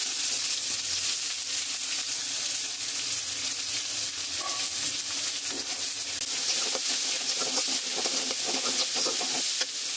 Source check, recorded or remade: recorded